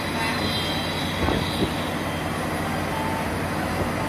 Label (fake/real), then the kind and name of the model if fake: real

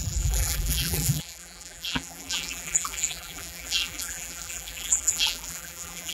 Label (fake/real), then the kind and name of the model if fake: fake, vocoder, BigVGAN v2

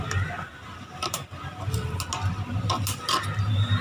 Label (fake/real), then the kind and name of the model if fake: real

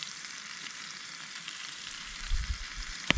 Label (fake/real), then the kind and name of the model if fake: fake, vocoder, BigVGAN v2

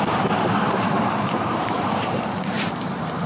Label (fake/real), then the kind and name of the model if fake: fake, vocoder, BigVGAN v2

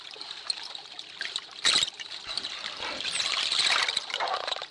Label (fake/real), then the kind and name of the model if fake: real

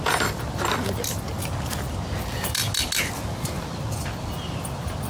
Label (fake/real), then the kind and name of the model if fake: real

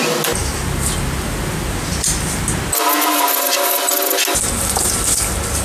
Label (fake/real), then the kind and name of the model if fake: real